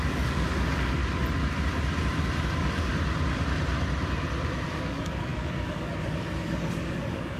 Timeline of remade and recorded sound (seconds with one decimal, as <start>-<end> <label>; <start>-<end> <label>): 0.0-1.0 remade; 1.0-2.4 recorded; 2.4-2.9 remade; 2.9-4.7 recorded; 4.7-7.4 remade